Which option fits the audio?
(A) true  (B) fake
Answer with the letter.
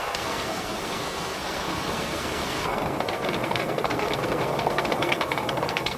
B